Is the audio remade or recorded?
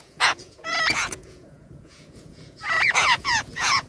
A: remade